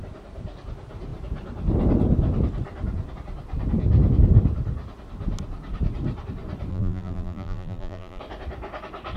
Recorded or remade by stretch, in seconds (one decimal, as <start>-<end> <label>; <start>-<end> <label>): 0.0-6.7 recorded; 6.7-8.2 remade; 8.2-9.2 recorded

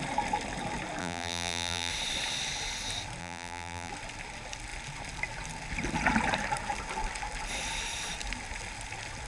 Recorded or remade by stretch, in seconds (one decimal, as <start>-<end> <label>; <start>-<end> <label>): 0.0-1.0 recorded; 1.0-1.9 remade; 1.9-3.2 recorded; 3.2-3.9 remade; 3.9-9.3 recorded

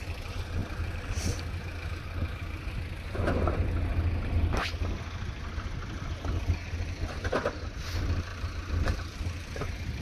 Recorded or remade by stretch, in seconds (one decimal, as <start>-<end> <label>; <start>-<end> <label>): 0.0-0.6 recorded; 0.6-1.2 remade; 1.2-8.3 recorded; 8.3-10.0 remade

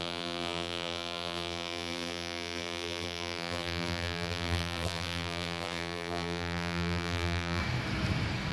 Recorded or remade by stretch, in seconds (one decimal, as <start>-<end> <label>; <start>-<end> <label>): 0.0-7.6 remade; 7.6-8.5 recorded